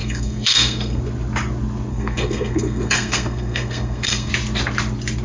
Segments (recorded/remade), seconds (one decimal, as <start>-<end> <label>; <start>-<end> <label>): 0.0-1.0 remade; 1.0-1.9 recorded; 1.9-4.3 remade; 4.3-5.2 recorded